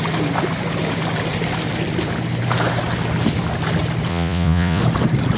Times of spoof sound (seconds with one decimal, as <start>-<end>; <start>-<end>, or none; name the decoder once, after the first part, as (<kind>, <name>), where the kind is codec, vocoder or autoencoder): 4.1-4.8 (vocoder, Vocos)